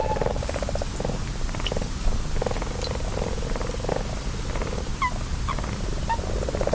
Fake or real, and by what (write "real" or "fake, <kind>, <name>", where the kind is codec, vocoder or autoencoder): real